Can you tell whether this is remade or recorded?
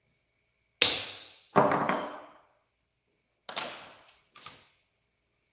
recorded